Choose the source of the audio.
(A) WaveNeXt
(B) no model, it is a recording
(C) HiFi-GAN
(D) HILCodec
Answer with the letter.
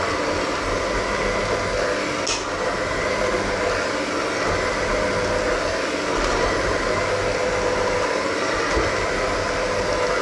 B